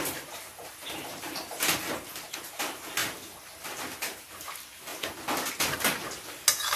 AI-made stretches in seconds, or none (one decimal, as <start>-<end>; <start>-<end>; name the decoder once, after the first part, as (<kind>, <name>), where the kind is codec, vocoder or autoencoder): 0.8-1.7 (vocoder, BigVGAN v2); 3.0-4.4